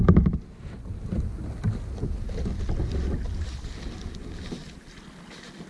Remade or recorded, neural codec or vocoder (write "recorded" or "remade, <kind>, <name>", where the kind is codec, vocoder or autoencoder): recorded